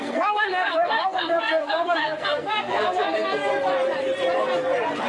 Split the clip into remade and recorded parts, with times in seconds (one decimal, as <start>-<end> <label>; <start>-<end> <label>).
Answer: 0.0-3.5 remade; 3.5-5.1 recorded